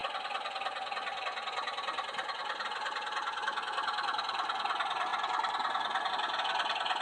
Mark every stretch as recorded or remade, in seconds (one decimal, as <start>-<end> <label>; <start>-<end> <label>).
0.0-7.0 recorded